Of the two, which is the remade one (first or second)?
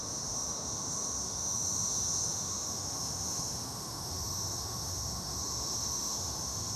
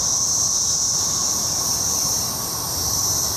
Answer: first